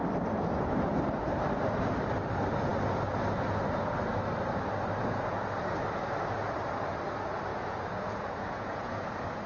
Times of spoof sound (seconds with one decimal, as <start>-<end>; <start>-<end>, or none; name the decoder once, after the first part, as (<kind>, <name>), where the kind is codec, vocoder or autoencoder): 7.5-8.9 (vocoder, Vocos)